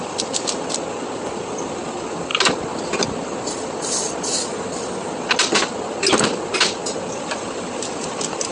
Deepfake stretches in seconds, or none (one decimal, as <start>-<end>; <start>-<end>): none